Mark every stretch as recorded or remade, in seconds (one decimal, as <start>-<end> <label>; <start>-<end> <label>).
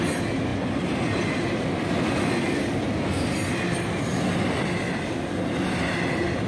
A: 0.0-6.5 recorded